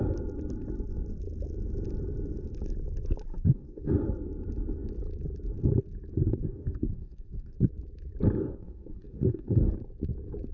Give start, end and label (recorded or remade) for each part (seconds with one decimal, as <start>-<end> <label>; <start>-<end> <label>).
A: 0.0-3.3 recorded; 3.3-3.9 remade; 3.9-6.2 recorded; 6.2-7.7 remade; 7.7-8.4 recorded; 8.4-9.7 remade; 9.7-10.5 recorded